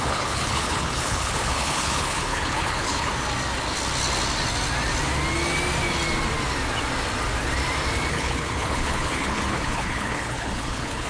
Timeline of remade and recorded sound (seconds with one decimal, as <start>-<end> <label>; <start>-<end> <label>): 0.0-3.1 remade; 3.1-8.1 recorded; 8.1-11.1 remade